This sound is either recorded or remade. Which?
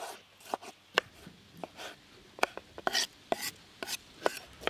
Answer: recorded